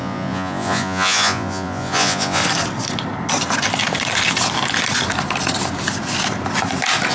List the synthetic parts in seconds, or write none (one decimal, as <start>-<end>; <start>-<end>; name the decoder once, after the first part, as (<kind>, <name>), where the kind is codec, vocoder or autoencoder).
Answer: 0.0-2.4 (vocoder, Vocos)